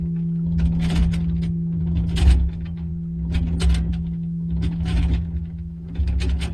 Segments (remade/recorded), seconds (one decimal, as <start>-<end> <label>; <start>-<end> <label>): 0.0-1.0 remade; 1.0-1.8 recorded; 1.8-2.9 remade; 2.9-3.9 recorded; 3.9-6.5 remade